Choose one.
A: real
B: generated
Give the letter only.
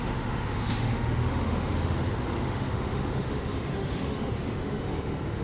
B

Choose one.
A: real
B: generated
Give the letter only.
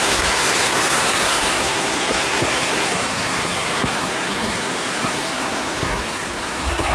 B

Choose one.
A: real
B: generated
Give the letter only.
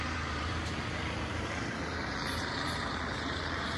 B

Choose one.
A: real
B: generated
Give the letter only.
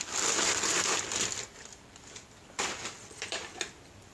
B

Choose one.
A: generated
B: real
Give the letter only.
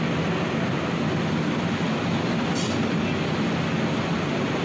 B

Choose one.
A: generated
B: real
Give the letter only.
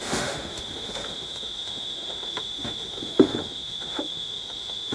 A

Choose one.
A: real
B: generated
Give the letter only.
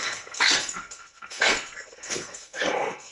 B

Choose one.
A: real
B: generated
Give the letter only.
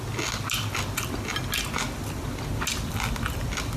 A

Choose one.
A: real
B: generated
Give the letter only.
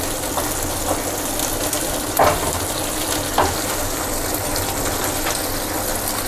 A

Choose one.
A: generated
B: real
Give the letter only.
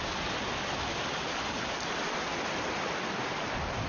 B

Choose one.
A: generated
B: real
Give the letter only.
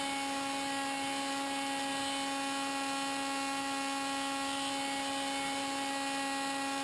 B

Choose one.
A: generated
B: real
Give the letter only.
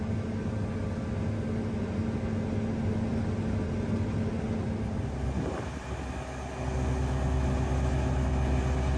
B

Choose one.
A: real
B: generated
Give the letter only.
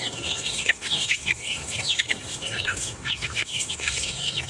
B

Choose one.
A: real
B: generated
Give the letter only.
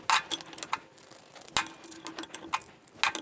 A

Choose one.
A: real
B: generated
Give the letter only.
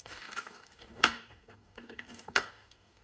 B